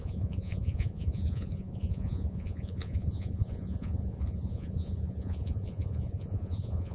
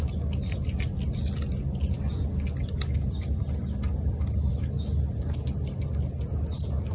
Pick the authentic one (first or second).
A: second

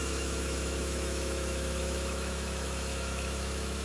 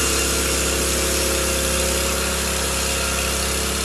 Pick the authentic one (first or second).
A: second